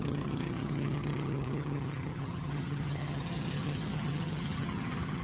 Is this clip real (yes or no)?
no